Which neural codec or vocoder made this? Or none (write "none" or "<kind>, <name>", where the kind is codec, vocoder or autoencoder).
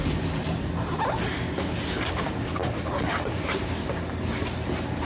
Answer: none